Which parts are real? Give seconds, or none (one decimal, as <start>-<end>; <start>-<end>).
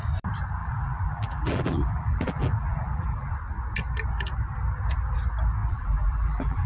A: 0.0-0.6; 3.3-5.6